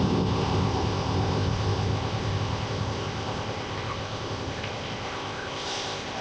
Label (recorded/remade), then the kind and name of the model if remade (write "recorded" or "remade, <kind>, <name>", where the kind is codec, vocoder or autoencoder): remade, codec, ZipCodec